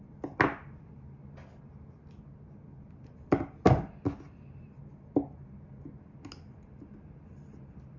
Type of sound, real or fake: real